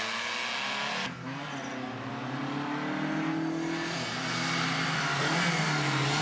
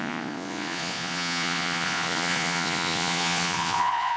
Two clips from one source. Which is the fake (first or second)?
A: second